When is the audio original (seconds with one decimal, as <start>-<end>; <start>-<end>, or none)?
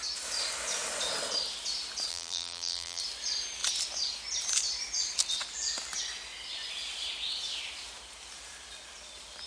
0.0-2.1; 3.0-9.5